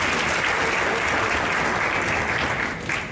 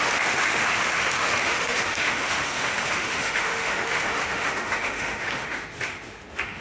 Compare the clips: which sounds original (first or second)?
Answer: first